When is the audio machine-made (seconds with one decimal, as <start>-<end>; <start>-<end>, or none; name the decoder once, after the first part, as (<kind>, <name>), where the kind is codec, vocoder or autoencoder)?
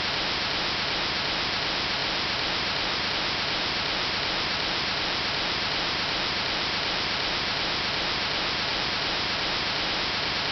2.0-3.1 (vocoder, BigVGAN v2); 3.6-7.3; 8.7-9.4